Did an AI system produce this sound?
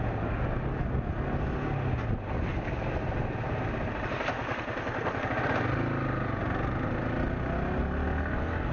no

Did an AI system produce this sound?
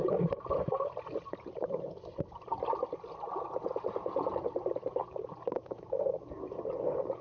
no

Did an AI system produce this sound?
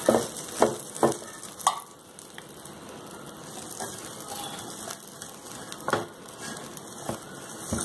no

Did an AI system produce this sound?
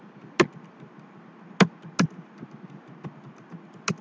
no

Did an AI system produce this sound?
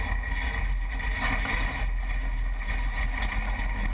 no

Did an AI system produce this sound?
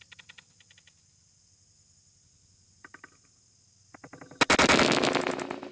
no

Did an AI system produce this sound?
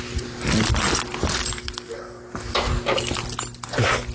no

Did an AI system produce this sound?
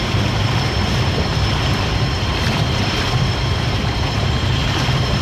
yes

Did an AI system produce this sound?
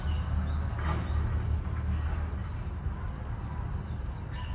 no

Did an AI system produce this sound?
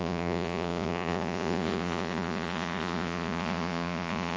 yes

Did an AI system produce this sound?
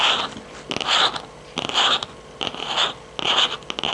no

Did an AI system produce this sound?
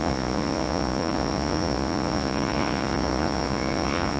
yes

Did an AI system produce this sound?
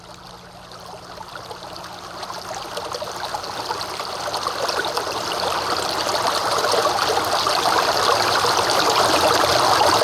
no